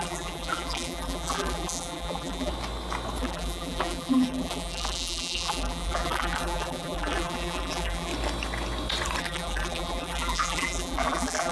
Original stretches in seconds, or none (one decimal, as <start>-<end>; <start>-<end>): 2.5-3.2; 8.1-9.2